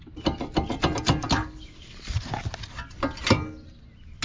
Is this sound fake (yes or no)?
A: no